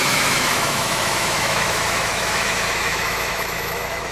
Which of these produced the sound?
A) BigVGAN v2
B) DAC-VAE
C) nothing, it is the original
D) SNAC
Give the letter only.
B